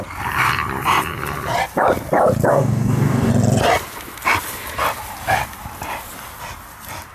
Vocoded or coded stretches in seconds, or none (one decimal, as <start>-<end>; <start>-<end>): 2.5-3.3